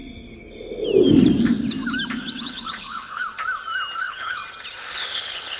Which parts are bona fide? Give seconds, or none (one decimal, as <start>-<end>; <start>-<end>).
0.0-2.4; 3.2-4.0; 4.4-4.9